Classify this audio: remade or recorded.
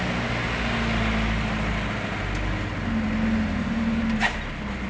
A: recorded